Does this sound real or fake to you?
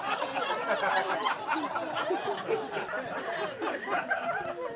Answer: real